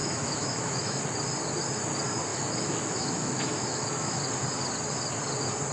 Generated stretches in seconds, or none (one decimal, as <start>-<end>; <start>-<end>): 0.0-1.0; 2.3-4.2